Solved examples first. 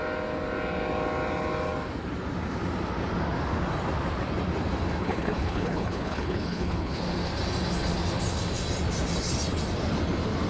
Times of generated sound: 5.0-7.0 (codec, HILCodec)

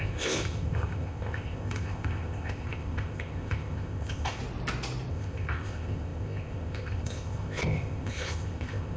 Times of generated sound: 0.0-4.4 (codec, ZipCodec); 5.1-9.0